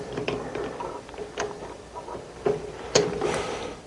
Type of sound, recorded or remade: remade